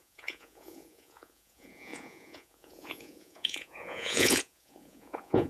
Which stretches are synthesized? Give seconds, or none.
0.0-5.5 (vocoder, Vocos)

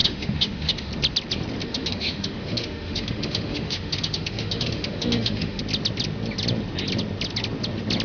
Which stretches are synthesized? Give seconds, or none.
0.0-0.9 (autoencoder, DAC-VAE); 1.6-5.6

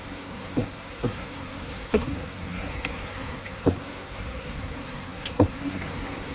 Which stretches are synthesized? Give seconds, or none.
0.0-6.3 (codec, SNAC)

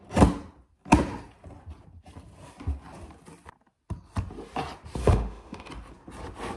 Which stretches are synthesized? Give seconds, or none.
5.0-5.7 (autoencoder, DAC-VAE)